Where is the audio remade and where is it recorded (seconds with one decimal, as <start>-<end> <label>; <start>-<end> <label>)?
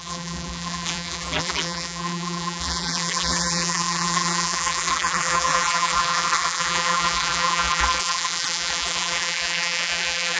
0.0-10.4 remade